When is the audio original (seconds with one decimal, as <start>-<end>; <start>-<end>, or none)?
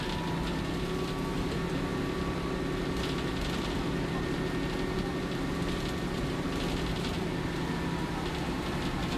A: 0.0-9.2